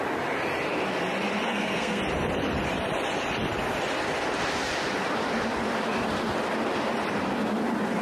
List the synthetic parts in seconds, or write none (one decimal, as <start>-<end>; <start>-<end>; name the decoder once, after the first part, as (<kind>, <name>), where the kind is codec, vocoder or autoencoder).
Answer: 1.5-2.0 (codec, SNAC)